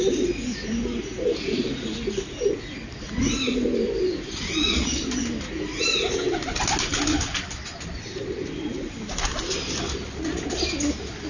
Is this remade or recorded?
recorded